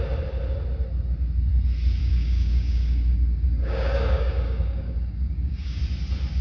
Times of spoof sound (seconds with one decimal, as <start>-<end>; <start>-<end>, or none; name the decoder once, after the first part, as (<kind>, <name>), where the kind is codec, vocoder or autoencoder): 2.0-5.8 (codec, DAC)